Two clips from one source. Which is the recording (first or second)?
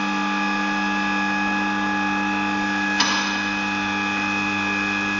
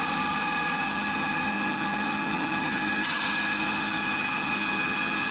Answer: first